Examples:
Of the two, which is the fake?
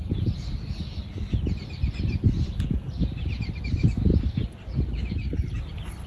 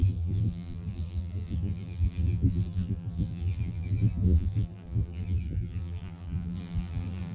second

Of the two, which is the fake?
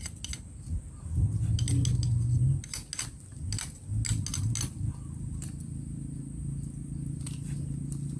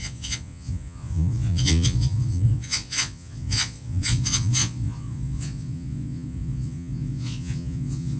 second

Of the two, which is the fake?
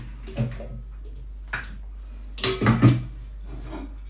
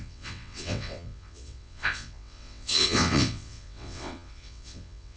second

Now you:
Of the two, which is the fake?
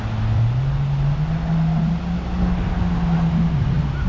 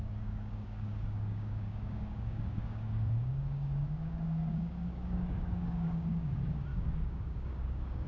second